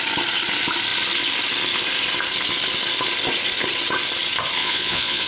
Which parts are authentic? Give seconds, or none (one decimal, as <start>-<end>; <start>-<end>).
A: 0.0-4.6